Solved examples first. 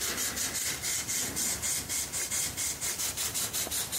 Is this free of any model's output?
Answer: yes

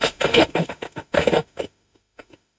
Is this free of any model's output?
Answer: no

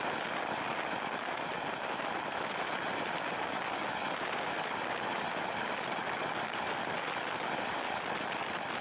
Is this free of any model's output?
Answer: yes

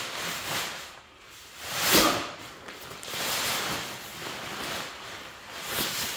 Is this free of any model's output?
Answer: yes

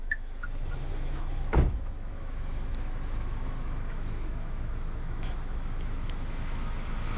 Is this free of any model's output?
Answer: no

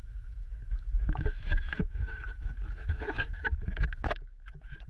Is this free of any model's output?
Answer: no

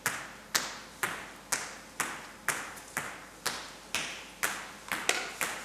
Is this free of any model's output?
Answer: yes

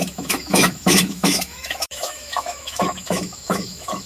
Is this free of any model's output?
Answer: no